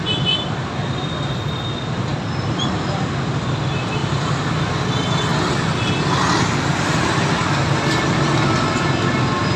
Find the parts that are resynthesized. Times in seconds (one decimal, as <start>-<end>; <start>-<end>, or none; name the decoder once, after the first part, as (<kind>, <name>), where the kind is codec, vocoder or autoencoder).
none